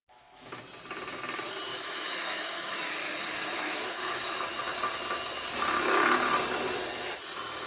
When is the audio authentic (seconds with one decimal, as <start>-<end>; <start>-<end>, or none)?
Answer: 0.6-1.7; 4.6-7.7

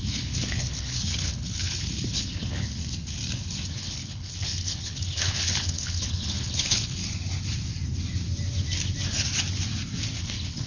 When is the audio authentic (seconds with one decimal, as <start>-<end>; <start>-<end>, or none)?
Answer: 2.8-3.7; 7.0-10.2

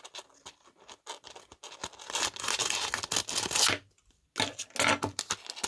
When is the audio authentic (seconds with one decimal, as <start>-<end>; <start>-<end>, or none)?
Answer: 0.0-5.7

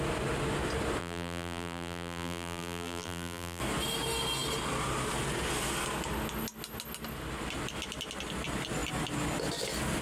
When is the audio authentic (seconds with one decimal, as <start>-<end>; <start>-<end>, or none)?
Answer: 0.0-1.0; 3.6-10.0